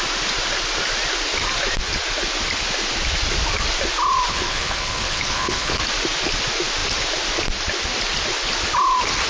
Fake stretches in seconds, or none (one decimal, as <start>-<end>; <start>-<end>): 4.3-5.8